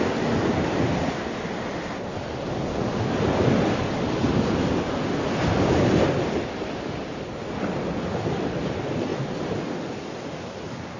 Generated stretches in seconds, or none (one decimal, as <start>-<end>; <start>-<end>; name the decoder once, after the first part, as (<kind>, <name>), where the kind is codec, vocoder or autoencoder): none

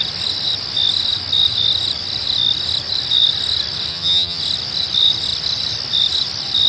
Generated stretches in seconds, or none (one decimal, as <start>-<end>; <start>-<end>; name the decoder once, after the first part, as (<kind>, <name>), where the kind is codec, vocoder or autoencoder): 3.9-4.4 (vocoder, HiFi-GAN)

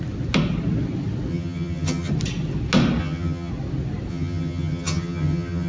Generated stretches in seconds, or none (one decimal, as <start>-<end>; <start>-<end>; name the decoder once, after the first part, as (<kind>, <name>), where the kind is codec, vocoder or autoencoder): 1.3-2.1 (vocoder, HiFi-GAN); 3.0-3.5; 4.1-5.7

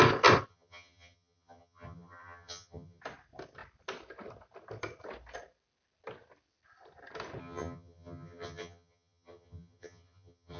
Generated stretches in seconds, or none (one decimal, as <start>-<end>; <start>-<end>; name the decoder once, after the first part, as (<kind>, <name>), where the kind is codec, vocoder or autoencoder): 0.5-3.0 (vocoder, HiFi-GAN); 7.4-10.6